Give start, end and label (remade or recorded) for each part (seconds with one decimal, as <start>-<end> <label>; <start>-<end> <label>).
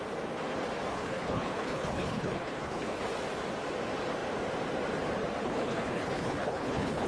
0.0-0.9 recorded; 0.9-3.0 remade; 3.0-5.4 recorded; 5.4-7.1 remade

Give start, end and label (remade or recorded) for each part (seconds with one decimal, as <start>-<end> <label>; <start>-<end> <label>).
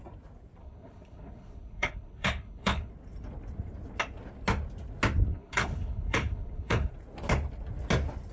0.0-0.6 recorded; 0.6-2.9 remade; 2.9-5.3 recorded; 5.3-6.9 remade; 6.9-8.3 recorded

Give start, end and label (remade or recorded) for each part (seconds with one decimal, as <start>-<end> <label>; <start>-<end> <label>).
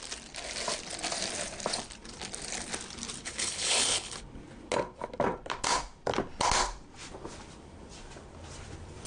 0.0-3.2 recorded; 3.2-4.2 remade; 4.2-9.1 recorded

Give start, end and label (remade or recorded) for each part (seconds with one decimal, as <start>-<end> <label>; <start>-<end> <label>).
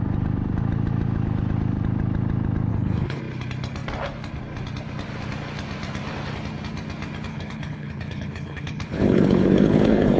0.0-2.7 recorded; 2.7-3.2 remade; 3.2-7.3 recorded; 7.3-10.2 remade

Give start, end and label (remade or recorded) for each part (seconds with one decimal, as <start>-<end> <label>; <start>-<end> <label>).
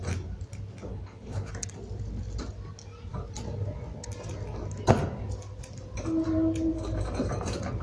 0.0-0.9 recorded; 0.9-1.5 remade; 1.5-7.8 recorded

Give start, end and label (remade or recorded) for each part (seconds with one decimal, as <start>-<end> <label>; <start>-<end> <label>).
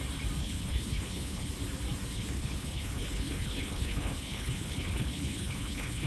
0.0-0.4 recorded; 0.4-1.5 remade; 1.5-2.1 recorded; 2.1-6.1 remade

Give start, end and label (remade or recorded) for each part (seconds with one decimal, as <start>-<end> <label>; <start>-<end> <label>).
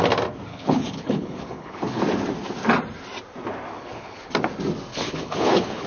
0.0-0.5 recorded; 0.5-2.0 remade; 2.0-3.7 recorded; 3.7-4.3 remade; 4.3-4.9 recorded; 4.9-5.9 remade